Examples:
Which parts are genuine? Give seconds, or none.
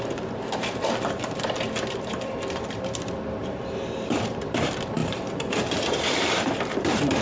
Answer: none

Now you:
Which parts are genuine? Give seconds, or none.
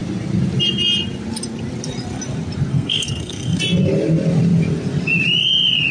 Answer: 0.0-2.7; 3.6-5.9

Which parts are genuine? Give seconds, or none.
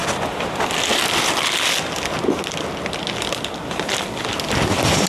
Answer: 0.0-5.1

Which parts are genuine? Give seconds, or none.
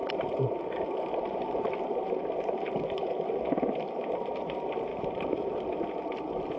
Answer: 1.6-4.9; 5.4-6.6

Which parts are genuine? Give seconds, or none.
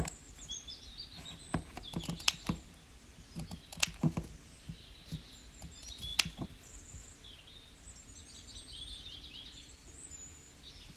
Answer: 0.0-11.0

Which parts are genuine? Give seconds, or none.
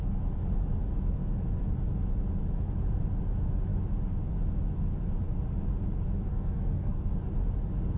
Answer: 0.0-6.3; 7.1-8.0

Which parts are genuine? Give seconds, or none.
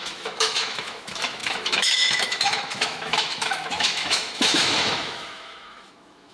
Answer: none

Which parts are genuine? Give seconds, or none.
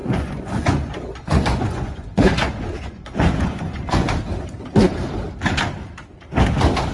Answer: 4.1-6.9